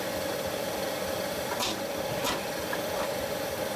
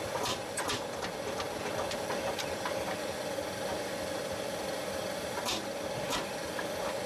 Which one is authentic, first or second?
second